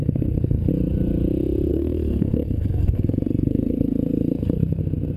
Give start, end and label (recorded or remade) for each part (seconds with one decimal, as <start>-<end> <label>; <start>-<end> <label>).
0.0-0.7 remade; 0.7-1.7 recorded; 1.7-4.8 remade; 4.8-5.2 recorded

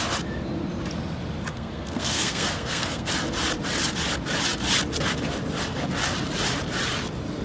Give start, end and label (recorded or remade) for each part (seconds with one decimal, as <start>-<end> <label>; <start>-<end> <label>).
0.0-1.5 recorded; 1.5-3.1 remade; 3.1-7.4 recorded

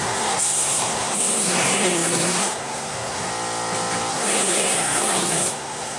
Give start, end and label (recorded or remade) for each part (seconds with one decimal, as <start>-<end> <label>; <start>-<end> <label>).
0.0-3.3 remade; 3.3-4.1 recorded; 4.1-6.0 remade

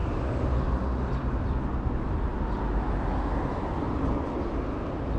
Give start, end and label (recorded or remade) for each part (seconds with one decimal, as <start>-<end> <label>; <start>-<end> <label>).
0.0-5.2 recorded

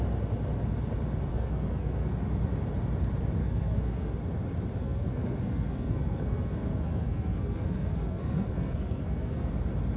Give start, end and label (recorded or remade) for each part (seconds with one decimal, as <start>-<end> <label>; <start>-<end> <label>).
0.0-1.3 recorded; 1.3-2.1 remade; 2.1-3.4 recorded; 3.4-4.1 remade; 4.1-4.8 recorded; 4.8-9.5 remade; 9.5-10.0 recorded

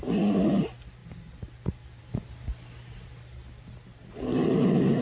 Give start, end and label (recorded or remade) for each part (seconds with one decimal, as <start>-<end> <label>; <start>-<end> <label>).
0.0-5.0 recorded

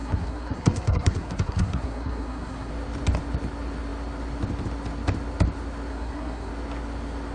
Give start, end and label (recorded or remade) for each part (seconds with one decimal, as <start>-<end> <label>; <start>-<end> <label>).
0.0-2.7 remade; 2.7-5.9 recorded; 5.9-6.5 remade; 6.5-7.3 recorded

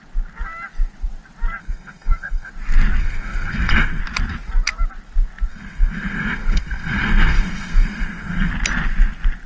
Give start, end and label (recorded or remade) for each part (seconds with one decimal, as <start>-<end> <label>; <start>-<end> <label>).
0.0-1.6 recorded; 1.6-2.5 remade; 2.5-3.0 recorded; 3.0-4.0 remade; 4.0-5.5 recorded; 5.5-8.5 remade; 8.5-9.5 recorded